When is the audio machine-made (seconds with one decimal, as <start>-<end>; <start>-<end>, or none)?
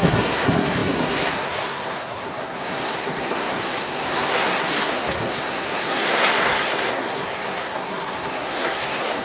0.0-9.2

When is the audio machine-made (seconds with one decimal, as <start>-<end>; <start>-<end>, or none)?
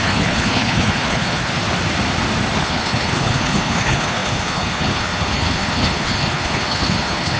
0.0-1.5; 2.6-7.4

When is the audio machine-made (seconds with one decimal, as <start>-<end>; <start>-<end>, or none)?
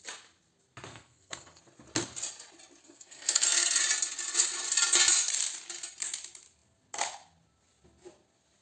0.9-1.6; 2.8-3.8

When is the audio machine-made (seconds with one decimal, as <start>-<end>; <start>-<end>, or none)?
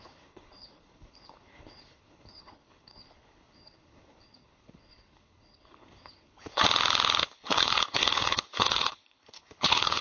0.0-6.6; 7.2-10.0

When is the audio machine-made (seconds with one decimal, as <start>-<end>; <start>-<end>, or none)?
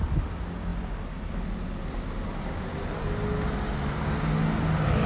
none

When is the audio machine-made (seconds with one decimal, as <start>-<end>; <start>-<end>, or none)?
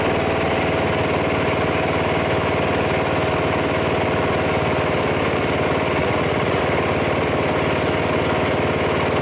6.0-6.6